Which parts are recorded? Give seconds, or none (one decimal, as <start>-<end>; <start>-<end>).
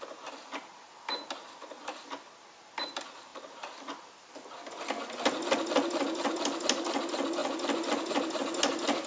0.0-9.1